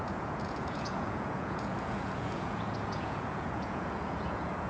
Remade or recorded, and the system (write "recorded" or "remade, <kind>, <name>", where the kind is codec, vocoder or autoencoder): remade, vocoder, Vocos